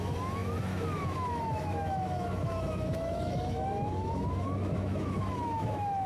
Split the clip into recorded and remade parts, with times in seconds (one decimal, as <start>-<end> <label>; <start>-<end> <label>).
0.0-6.1 remade